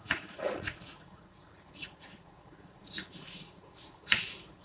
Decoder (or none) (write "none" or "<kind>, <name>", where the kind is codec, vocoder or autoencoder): vocoder, Vocos